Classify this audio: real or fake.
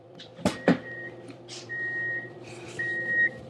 fake